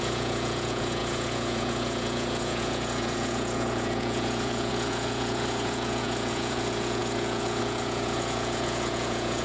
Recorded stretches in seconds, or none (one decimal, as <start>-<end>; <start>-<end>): none